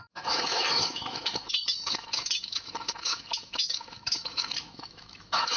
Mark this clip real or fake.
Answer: fake